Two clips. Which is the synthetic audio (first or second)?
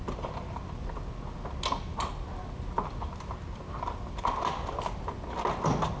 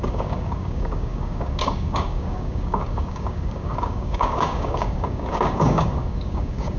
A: second